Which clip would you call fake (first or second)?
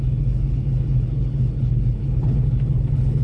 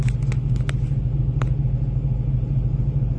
first